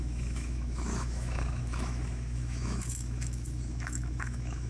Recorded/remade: remade